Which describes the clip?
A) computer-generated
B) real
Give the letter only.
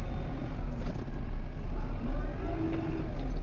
B